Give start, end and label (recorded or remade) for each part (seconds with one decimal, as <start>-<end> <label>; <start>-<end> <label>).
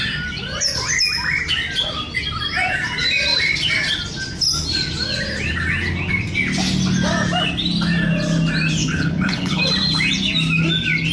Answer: 0.0-8.8 recorded; 8.8-9.6 remade; 9.6-11.1 recorded